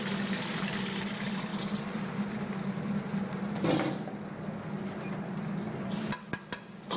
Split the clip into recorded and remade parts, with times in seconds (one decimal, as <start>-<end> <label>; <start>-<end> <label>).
0.0-7.0 recorded